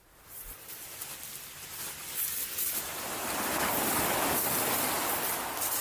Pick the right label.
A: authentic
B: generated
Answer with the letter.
A